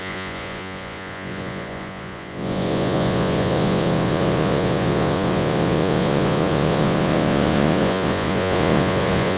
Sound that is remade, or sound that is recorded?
remade